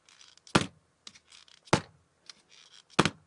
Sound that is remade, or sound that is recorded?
recorded